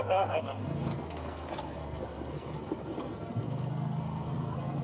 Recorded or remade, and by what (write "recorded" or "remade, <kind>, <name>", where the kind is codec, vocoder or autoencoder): remade, codec, SNAC